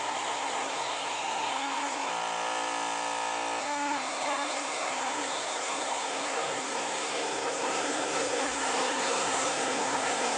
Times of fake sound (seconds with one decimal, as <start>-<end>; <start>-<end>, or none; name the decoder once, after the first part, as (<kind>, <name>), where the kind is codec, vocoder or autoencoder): 0.0-2.1 (codec, SNAC); 3.6-10.4